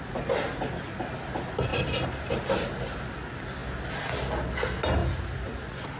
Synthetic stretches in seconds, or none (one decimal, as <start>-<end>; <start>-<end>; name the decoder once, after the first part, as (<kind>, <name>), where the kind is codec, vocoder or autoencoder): none